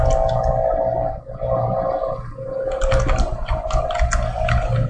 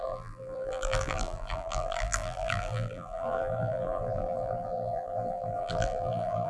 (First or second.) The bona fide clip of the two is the first